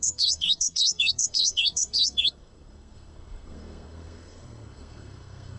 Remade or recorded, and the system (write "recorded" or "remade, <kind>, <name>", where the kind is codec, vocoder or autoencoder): remade, codec, SNAC